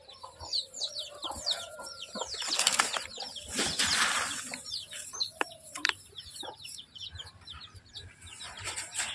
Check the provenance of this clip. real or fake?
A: fake